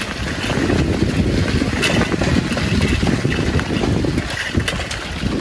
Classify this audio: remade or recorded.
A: recorded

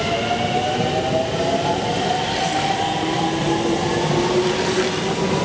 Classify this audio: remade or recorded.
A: recorded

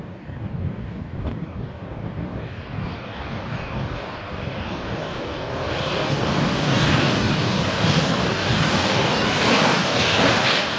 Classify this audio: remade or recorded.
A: remade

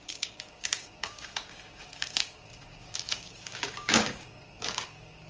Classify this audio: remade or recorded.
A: remade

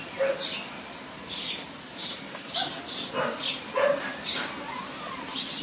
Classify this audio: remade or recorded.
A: recorded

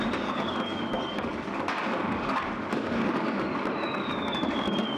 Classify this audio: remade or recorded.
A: remade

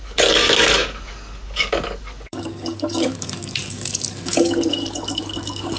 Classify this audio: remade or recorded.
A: remade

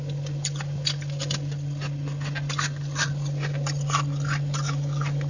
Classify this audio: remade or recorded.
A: recorded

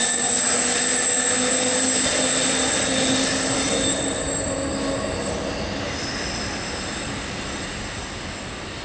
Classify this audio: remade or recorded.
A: recorded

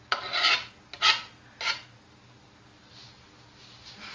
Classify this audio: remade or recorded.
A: recorded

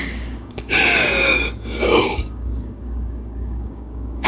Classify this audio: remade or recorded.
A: remade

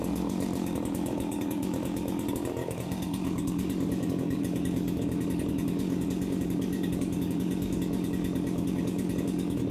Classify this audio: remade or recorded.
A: remade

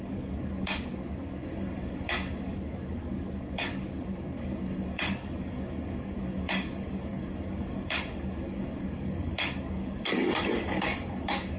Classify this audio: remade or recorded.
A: remade